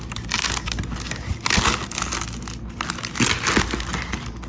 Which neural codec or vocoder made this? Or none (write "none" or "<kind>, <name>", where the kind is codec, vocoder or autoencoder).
none